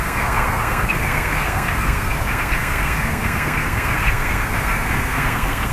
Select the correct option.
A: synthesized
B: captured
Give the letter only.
A